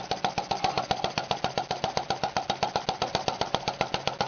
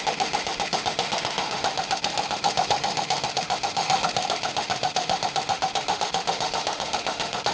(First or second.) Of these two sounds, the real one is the first